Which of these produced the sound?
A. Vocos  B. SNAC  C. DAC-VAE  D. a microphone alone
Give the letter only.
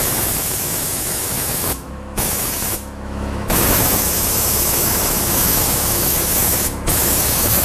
C